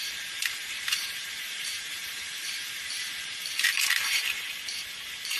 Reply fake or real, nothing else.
fake